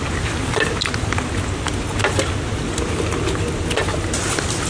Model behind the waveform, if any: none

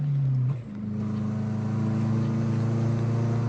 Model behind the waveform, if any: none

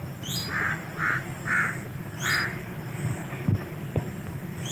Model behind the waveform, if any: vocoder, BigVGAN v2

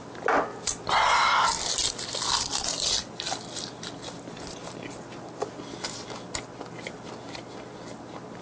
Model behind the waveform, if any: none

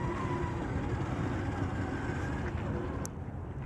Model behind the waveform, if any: none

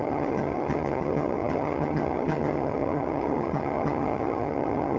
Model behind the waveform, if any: vocoder, HiFi-GAN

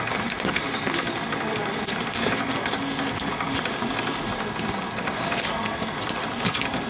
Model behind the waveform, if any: none